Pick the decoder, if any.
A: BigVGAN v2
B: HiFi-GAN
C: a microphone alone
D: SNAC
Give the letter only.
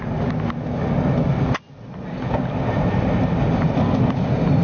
C